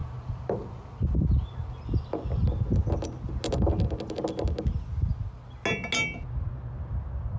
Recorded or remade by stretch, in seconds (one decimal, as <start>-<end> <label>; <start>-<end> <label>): 0.0-7.4 recorded